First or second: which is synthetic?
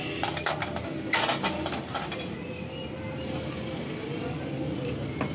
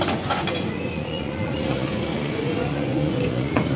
second